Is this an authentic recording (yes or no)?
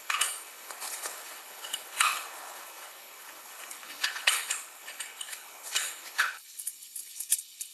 no